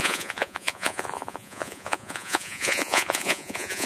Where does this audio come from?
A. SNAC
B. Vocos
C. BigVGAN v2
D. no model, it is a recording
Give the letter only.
B